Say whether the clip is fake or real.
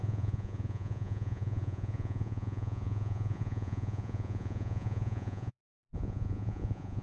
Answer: fake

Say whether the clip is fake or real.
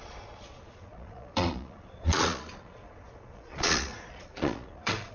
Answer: fake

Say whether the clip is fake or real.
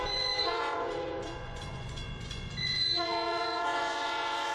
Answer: fake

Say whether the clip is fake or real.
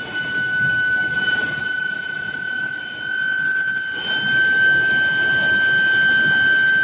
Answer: real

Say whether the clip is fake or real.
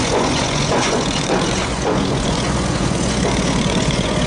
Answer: fake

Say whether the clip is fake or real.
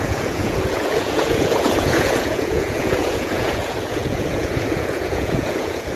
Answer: fake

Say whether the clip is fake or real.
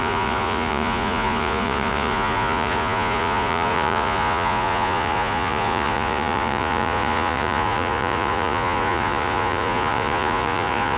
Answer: fake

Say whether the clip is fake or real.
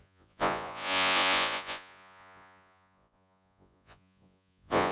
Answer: fake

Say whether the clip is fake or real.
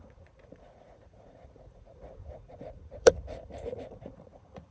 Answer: fake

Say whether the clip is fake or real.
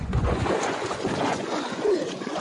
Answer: fake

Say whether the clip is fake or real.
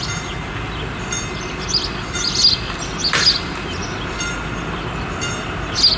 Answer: real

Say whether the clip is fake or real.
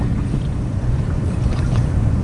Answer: fake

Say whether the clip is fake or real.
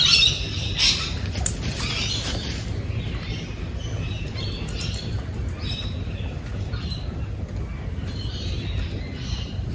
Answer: real